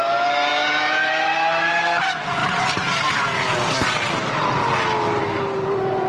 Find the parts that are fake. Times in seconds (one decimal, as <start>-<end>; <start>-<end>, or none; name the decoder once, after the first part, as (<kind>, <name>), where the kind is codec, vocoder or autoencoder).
none